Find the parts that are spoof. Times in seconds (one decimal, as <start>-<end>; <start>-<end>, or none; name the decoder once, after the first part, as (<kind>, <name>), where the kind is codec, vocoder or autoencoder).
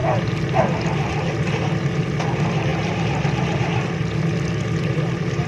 none